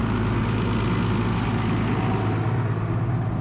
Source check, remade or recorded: recorded